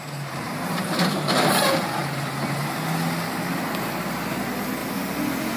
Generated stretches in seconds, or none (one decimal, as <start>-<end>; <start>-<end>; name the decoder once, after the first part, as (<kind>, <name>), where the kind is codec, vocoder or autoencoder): none